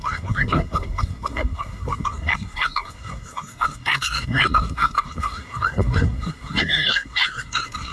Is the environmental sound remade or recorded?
remade